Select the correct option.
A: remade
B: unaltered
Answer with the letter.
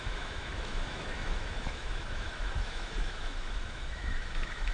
A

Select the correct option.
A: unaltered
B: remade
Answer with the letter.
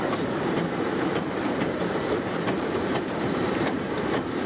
B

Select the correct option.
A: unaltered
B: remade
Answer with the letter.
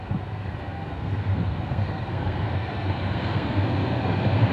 B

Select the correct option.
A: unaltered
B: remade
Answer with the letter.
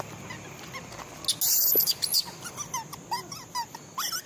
A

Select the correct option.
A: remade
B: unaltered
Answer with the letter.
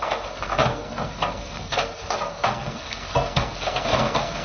A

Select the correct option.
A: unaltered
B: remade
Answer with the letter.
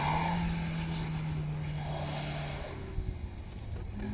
A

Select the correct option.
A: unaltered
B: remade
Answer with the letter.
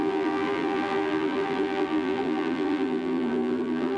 B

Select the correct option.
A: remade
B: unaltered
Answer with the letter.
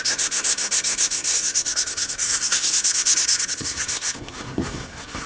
A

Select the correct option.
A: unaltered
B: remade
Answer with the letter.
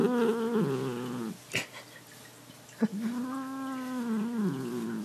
A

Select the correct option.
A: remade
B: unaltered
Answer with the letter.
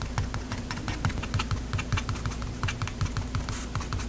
B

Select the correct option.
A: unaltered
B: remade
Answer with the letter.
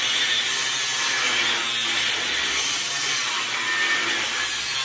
A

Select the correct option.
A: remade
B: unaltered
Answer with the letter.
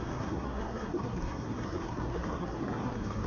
A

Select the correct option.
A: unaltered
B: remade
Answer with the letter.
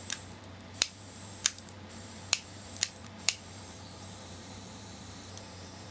B